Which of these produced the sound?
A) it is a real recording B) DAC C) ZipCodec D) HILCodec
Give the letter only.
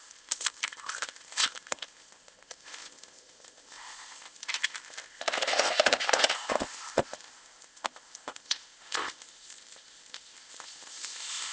C